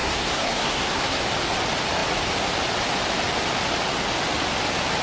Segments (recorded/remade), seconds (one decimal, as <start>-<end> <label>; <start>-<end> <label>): 0.0-1.2 remade; 1.2-5.0 recorded

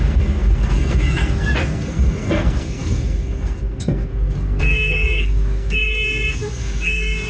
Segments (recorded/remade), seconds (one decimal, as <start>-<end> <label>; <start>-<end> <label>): 0.0-7.3 remade